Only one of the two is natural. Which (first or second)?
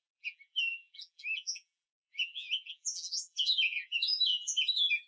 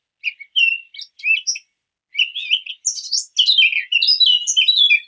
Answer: second